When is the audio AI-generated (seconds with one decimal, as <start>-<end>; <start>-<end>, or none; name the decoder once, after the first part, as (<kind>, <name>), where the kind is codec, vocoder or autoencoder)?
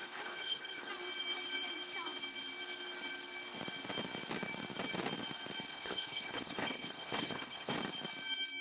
0.0-0.9 (codec, HILCodec); 5.7-7.7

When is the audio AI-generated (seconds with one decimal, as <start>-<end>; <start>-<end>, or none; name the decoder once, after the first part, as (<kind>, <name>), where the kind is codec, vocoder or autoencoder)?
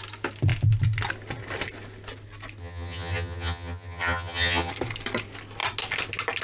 2.6-4.7 (vocoder, HiFi-GAN)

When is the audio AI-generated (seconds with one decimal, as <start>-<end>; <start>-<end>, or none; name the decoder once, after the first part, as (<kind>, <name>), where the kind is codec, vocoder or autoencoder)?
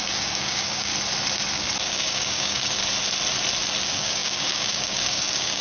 0.0-0.9 (codec, DAC); 1.8-2.8; 3.8-5.6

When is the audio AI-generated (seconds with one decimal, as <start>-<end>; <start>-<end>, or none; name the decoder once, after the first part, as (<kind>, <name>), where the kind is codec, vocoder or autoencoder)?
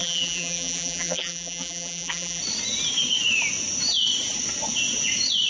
0.0-2.4 (vocoder, BigVGAN v2)